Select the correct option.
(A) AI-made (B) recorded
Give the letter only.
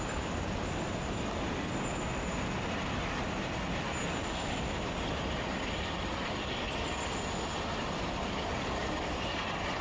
B